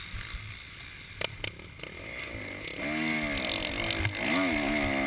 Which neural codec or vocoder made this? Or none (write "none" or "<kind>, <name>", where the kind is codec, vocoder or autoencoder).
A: none